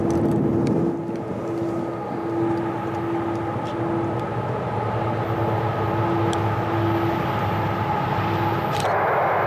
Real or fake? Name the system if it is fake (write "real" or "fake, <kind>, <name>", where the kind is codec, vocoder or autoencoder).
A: real